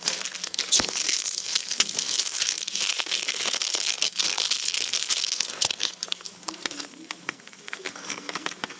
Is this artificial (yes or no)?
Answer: yes